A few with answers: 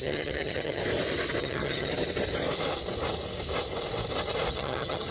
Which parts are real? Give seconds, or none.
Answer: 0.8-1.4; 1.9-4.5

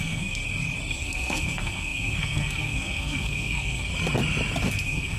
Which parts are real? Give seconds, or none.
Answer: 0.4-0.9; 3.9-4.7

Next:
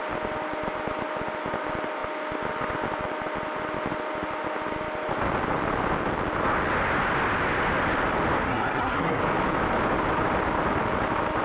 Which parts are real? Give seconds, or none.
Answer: 0.0-8.4; 9.2-11.4

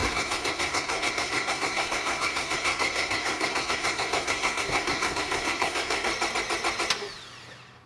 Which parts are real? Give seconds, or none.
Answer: 6.1-7.9

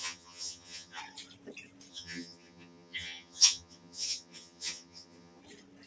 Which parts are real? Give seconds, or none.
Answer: 1.0-1.9; 5.4-5.9

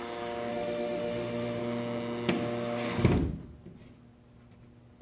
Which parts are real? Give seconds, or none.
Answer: 0.0-0.5; 1.6-5.0